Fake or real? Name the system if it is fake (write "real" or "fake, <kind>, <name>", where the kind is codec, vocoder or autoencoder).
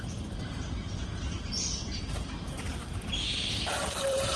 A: fake, vocoder, BigVGAN v2